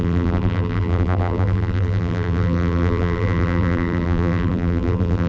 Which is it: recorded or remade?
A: remade